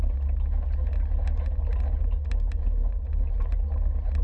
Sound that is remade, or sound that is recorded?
recorded